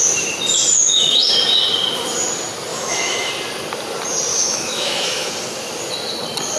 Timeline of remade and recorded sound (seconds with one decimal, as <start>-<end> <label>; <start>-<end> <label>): 0.0-0.7 recorded; 0.7-1.3 remade; 1.3-2.7 recorded; 2.7-3.3 remade; 3.3-4.3 recorded; 4.3-5.3 remade; 5.3-6.6 recorded